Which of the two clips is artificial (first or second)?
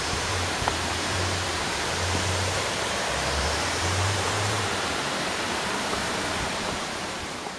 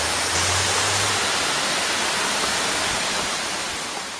first